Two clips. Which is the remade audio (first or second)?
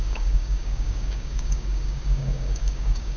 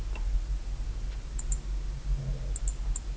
first